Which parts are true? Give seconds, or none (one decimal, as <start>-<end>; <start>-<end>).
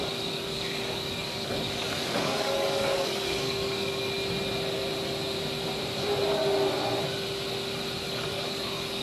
3.9-8.1